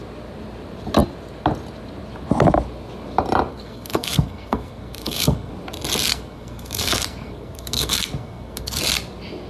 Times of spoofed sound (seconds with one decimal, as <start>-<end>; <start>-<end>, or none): 3.5-5.5; 6.1-8.8